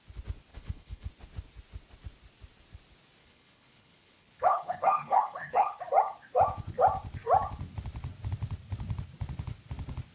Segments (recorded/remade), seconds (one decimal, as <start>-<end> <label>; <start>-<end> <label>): 0.0-0.5 recorded; 0.5-1.1 remade; 1.1-3.2 recorded; 3.2-5.8 remade; 5.8-10.1 recorded